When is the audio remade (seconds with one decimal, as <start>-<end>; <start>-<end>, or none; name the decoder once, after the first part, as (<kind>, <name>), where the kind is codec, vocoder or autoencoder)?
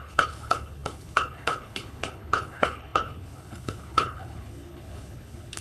0.0-5.6 (codec, HILCodec)